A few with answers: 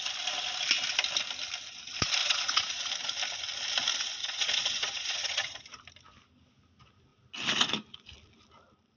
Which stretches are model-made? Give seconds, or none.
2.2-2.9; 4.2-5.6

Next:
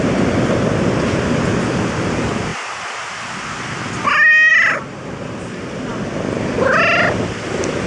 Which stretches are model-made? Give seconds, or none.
none